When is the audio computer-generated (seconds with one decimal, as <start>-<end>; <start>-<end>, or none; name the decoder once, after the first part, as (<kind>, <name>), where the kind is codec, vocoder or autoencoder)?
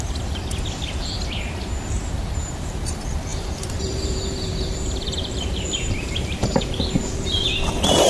0.0-0.4 (vocoder, BigVGAN v2); 2.6-8.1